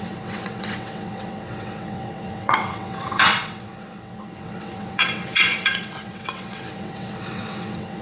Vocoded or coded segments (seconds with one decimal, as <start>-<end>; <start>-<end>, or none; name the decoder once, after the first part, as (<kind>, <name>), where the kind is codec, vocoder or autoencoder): 0.0-8.0 (vocoder, WaveNeXt)